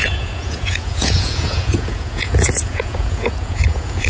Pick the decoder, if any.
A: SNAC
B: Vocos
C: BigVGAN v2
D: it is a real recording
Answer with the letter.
B